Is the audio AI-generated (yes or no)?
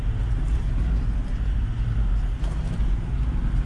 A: no